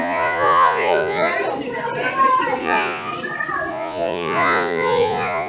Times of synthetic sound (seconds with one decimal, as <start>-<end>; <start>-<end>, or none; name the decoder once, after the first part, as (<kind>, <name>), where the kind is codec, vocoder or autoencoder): 0.0-1.3 (vocoder, Vocos); 2.6-3.1; 3.7-5.5